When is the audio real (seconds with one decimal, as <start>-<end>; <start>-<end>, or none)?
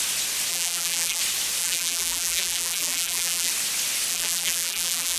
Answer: 0.0-0.5; 1.2-1.6; 3.5-4.1